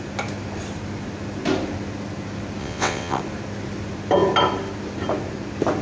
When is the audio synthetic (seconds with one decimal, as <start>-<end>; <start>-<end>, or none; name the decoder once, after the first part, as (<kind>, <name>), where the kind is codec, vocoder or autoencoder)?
2.6-3.2 (vocoder, WaveNeXt)